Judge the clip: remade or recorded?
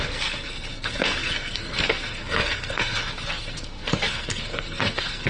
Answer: remade